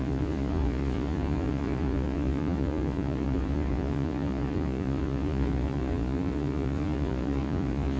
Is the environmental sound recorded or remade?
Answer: remade